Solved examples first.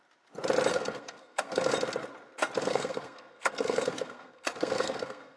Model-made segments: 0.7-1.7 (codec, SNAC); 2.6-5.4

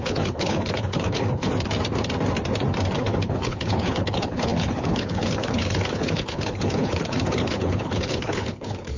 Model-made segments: 0.0-1.5 (codec, HILCodec); 3.0-9.0

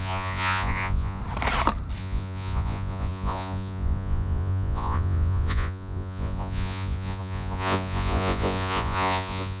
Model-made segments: 0.0-1.2 (vocoder, Vocos); 2.0-9.6

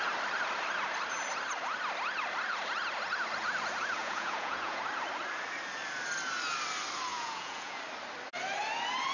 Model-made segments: 4.0-4.8 (vocoder, Vocos); 7.1-7.8